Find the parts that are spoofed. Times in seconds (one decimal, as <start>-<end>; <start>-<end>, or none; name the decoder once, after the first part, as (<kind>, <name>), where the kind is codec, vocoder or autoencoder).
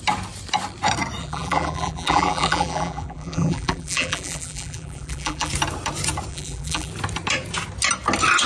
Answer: 1.2-5.5 (vocoder, BigVGAN v2); 6.3-6.9